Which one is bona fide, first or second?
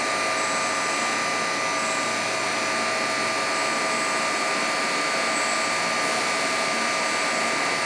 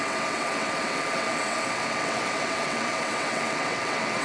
first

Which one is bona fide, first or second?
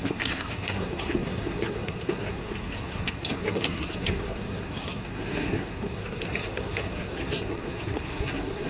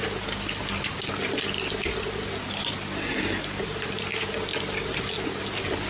second